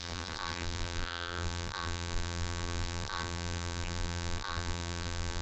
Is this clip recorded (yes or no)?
no